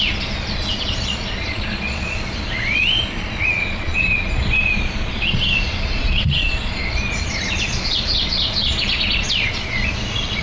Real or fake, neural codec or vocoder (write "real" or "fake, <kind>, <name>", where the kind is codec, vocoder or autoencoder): fake, vocoder, Vocos